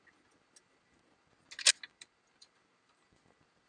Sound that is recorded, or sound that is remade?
recorded